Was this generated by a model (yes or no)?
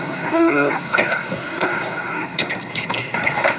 yes